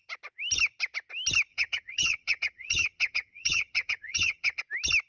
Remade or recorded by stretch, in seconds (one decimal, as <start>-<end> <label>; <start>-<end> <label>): 0.0-1.5 recorded; 1.5-4.6 remade; 4.6-5.1 recorded